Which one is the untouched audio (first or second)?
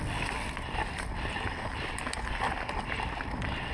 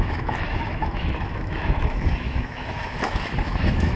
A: first